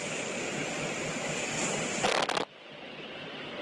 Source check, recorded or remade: recorded